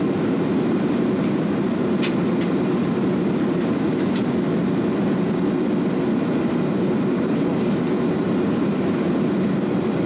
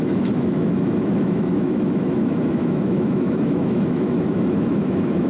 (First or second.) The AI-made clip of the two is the second